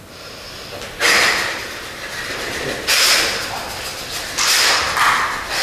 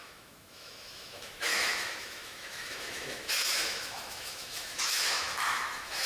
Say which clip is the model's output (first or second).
second